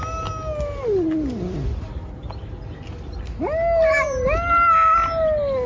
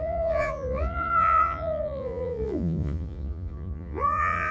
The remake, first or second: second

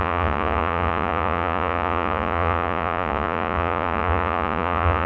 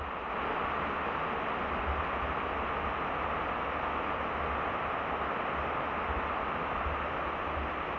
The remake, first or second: first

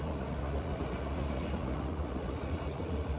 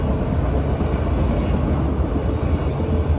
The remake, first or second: first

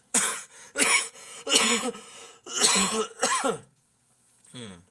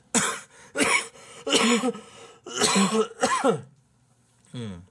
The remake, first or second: first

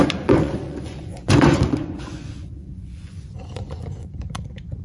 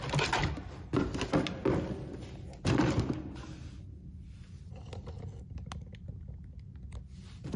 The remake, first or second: first